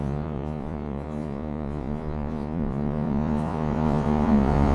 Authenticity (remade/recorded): remade